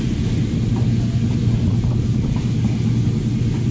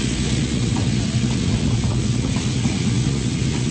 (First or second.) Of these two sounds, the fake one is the second